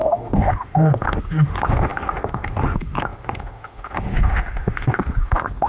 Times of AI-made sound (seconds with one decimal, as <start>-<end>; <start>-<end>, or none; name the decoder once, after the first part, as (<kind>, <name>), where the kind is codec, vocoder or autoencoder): 0.0-5.7 (autoencoder, DAC-VAE)